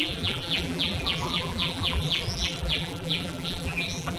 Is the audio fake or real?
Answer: fake